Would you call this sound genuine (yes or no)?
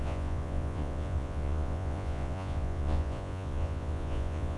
no